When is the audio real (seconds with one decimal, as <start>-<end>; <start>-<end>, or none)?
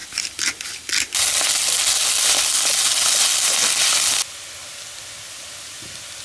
0.0-6.2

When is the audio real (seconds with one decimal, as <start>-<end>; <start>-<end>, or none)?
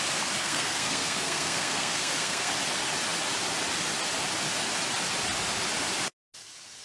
0.0-0.4; 2.5-6.8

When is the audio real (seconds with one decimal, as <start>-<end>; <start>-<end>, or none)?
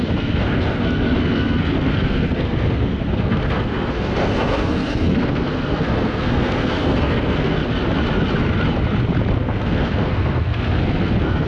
7.6-9.4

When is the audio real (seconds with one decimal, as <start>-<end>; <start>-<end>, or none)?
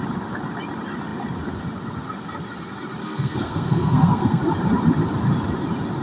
0.0-3.0; 4.4-6.0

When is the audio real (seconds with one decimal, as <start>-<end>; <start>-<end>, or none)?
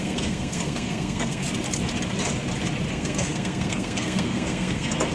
1.4-2.9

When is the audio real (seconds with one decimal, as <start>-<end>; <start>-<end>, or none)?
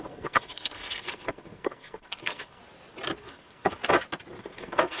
2.6-3.2; 3.8-4.4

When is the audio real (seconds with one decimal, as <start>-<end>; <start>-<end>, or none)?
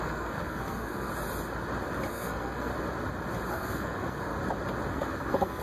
1.1-2.1; 2.7-3.5; 4.3-4.9